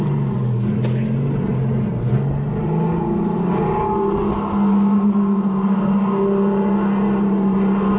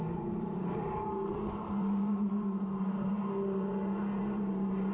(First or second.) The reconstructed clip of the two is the second